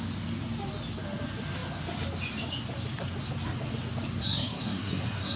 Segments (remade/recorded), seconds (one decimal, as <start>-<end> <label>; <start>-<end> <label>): 0.0-4.2 recorded; 4.2-5.4 remade